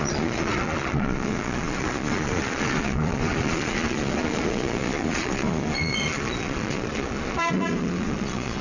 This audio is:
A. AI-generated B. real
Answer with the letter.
A